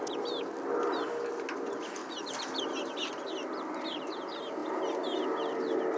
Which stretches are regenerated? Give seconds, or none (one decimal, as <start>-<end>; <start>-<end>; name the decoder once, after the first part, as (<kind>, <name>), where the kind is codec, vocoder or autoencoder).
none